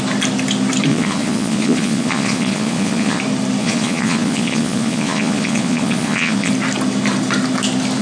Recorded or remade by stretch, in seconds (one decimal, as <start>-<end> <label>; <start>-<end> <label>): 0.0-0.9 recorded; 0.9-3.2 remade; 3.2-3.6 recorded; 3.6-6.5 remade; 6.5-8.0 recorded